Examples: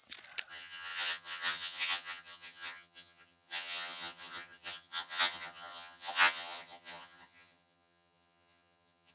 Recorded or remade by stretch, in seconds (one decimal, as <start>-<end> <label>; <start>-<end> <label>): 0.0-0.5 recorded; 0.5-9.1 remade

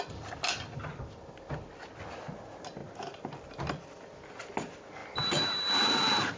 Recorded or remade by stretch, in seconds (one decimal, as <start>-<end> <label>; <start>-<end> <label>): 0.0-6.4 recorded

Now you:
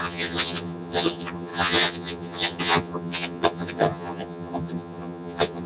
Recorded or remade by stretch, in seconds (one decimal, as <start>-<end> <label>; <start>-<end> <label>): 0.0-5.7 remade